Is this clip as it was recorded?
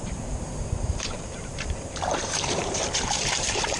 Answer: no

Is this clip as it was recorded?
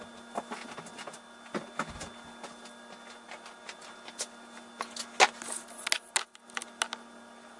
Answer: yes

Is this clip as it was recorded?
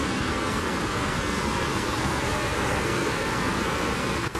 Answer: no